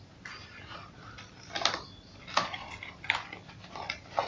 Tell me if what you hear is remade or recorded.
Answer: recorded